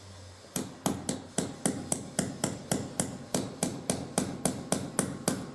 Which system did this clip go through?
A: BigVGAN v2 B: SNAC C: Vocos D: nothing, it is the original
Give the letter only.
D